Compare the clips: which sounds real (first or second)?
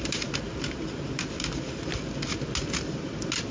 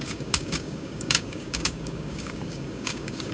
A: first